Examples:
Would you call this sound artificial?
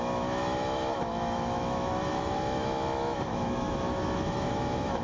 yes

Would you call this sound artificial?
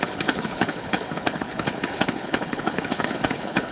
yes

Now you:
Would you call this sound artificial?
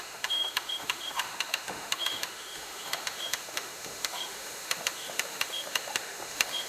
yes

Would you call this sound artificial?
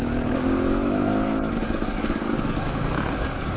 yes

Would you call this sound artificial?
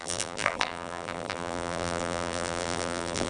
yes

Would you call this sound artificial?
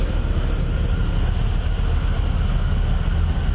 no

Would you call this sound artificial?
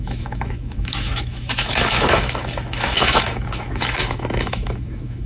yes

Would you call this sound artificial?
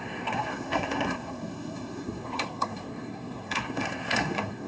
yes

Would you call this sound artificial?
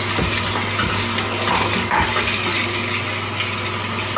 no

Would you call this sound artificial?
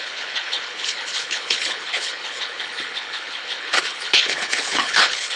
yes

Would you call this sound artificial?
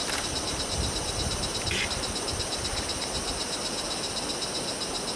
no